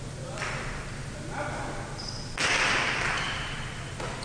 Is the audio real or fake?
real